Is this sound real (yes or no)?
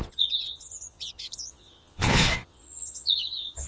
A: no